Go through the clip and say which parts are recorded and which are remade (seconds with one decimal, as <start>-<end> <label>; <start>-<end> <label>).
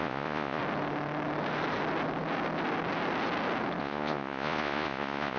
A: 0.0-0.6 remade; 0.6-3.8 recorded; 3.8-5.4 remade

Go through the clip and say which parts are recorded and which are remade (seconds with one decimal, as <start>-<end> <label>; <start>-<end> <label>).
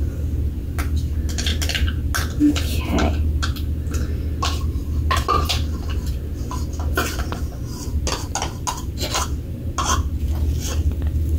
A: 0.0-11.4 recorded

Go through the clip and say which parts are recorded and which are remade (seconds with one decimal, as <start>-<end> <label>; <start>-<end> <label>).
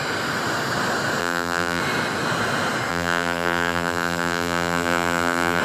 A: 0.0-1.2 recorded; 1.2-1.8 remade; 1.8-2.9 recorded; 2.9-5.6 remade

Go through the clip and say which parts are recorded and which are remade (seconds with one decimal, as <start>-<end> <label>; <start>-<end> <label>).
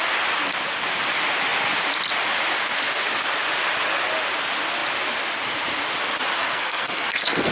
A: 0.0-6.4 recorded; 6.4-7.5 remade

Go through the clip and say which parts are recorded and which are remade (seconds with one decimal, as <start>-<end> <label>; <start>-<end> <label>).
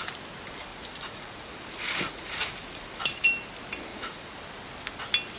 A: 0.0-0.7 recorded; 0.7-3.0 remade; 3.0-3.9 recorded; 3.9-4.4 remade; 4.4-5.4 recorded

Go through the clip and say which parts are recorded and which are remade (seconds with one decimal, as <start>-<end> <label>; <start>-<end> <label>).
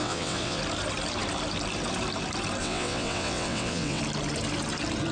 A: 0.0-0.6 remade; 0.6-2.6 recorded; 2.6-4.0 remade; 4.0-5.1 recorded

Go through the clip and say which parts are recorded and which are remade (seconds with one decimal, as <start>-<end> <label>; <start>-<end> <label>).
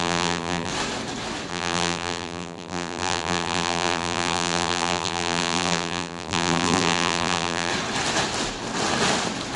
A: 0.0-0.7 remade; 0.7-1.5 recorded; 1.5-7.7 remade; 7.7-9.6 recorded